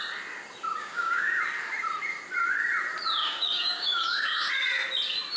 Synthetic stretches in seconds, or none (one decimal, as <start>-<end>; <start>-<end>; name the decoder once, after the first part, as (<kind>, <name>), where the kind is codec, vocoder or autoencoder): 0.8-1.4 (codec, DAC); 3.2-4.5